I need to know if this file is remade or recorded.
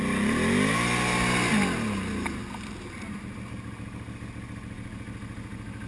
recorded